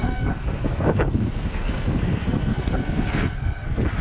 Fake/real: fake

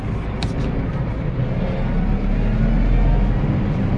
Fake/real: real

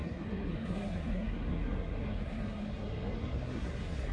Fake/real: fake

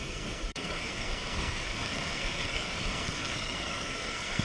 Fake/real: fake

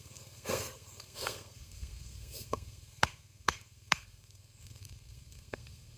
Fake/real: fake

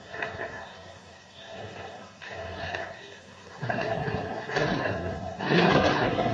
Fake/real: fake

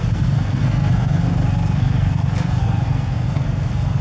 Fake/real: fake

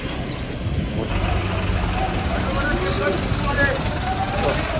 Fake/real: real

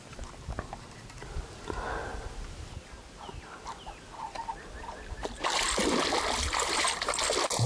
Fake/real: real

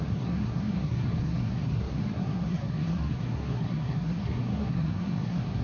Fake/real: fake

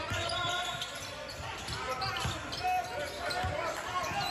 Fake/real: real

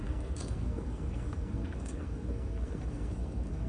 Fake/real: fake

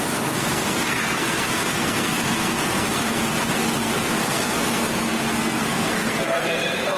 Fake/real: fake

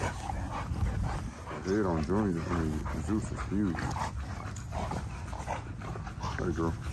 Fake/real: real